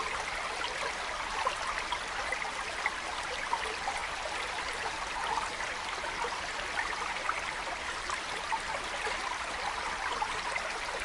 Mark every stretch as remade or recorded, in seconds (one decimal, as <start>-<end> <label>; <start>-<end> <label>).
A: 0.0-11.0 recorded